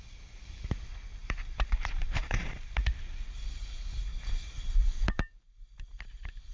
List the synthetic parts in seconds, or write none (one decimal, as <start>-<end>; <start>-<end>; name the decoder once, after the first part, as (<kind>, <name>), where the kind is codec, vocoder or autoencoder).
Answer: 1.2-2.8 (vocoder, BigVGAN v2); 4.1-5.8